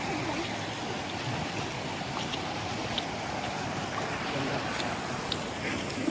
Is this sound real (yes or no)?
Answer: yes